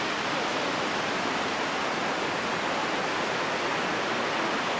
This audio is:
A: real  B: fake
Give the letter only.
A